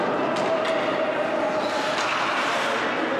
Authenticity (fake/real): real